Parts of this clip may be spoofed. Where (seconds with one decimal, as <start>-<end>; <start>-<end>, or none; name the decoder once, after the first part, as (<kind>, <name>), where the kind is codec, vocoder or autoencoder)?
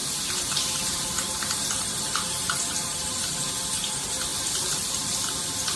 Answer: 0.0-3.5 (vocoder, BigVGAN v2); 4.3-5.2